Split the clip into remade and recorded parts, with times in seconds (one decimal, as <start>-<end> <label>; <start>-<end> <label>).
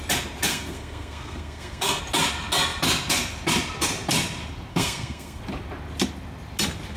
0.0-0.5 recorded; 0.5-2.0 remade; 2.0-4.7 recorded; 4.7-5.4 remade; 5.4-7.0 recorded